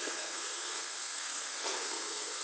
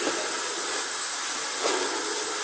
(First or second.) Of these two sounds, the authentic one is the second